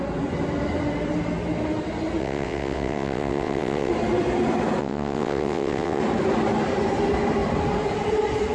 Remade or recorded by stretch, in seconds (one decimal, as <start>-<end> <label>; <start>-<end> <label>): 0.0-2.2 recorded; 2.2-3.9 remade; 3.9-4.8 recorded; 4.8-6.0 remade; 6.0-8.5 recorded